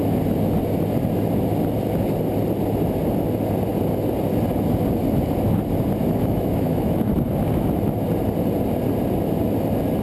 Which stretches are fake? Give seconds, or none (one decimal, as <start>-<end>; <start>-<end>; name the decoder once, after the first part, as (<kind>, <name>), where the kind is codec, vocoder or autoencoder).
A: 6.0-7.1 (autoencoder, DAC-VAE)